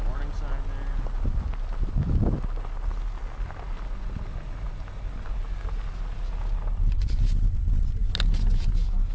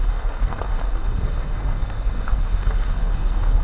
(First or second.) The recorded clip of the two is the first